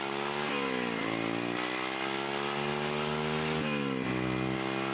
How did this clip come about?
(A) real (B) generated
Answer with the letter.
A